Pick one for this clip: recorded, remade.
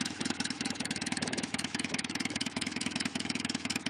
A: remade